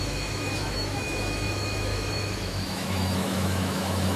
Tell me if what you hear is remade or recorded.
remade